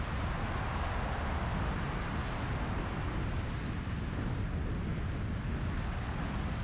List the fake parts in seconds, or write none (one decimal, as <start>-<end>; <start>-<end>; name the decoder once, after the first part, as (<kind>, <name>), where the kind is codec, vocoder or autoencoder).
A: none